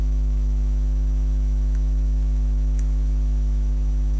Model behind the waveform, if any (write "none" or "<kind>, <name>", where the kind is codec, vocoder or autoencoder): autoencoder, DAC-VAE